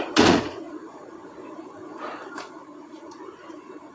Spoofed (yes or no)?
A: yes